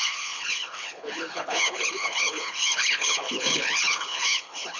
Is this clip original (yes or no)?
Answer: no